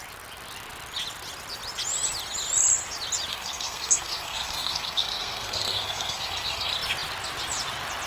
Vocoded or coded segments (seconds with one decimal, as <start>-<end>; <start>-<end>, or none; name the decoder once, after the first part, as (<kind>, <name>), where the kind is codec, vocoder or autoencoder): 3.3-6.7 (codec, SNAC)